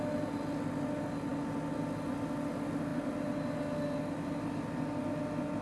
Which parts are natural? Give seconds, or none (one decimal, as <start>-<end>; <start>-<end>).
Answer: 0.0-5.6